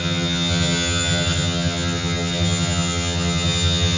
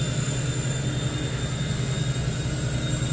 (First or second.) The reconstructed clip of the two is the first